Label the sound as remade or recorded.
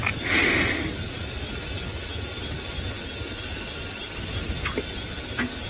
recorded